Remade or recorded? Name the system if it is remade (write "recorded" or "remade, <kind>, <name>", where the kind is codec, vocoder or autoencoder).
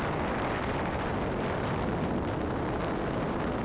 recorded